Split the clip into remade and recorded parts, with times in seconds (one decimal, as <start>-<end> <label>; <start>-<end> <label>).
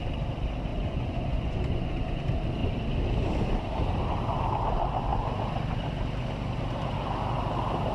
0.0-0.7 recorded; 0.7-2.2 remade; 2.2-7.9 recorded